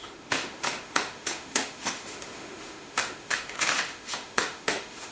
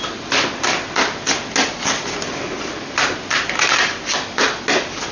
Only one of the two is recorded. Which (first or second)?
second